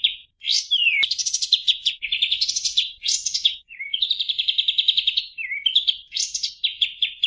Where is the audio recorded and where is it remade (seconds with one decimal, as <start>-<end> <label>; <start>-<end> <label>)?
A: 0.0-1.2 recorded; 1.2-4.1 remade; 4.1-7.3 recorded